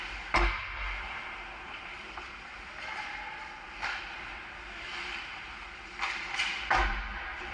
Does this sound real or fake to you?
fake